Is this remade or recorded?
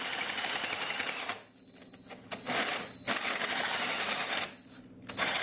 recorded